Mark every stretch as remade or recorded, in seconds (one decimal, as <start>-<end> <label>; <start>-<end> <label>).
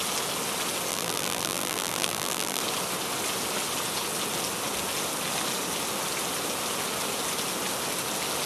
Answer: 0.0-0.9 recorded; 0.9-2.6 remade; 2.6-8.5 recorded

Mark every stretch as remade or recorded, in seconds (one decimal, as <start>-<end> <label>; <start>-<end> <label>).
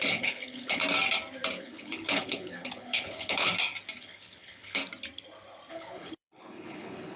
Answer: 0.0-0.8 remade; 0.8-1.6 recorded; 1.6-3.5 remade; 3.5-4.0 recorded; 4.0-4.8 remade; 4.8-5.7 recorded; 5.7-7.2 remade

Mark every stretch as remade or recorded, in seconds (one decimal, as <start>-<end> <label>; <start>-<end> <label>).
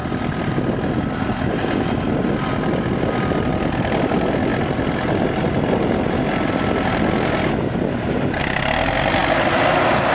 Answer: 0.0-10.1 recorded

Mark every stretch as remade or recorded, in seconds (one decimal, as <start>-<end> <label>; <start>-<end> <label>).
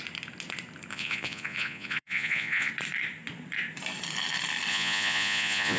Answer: 0.0-0.9 recorded; 0.9-2.7 remade; 2.7-4.7 recorded; 4.7-5.8 remade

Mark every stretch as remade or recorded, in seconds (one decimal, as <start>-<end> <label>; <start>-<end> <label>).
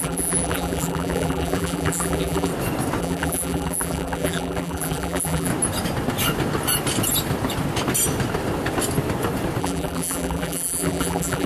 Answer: 0.0-2.5 remade; 2.5-3.0 recorded; 3.0-5.5 remade; 5.5-9.6 recorded; 9.6-11.5 remade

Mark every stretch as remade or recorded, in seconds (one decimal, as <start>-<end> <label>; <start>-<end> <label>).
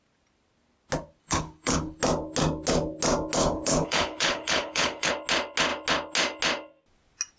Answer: 0.0-1.2 recorded; 1.2-2.0 remade; 2.0-3.4 recorded; 3.4-5.1 remade; 5.1-7.4 recorded